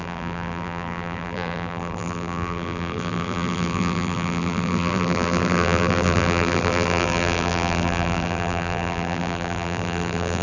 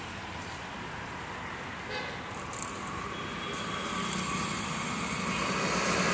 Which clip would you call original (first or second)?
second